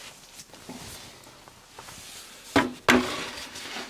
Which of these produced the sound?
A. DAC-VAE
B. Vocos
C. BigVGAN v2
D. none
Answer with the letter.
D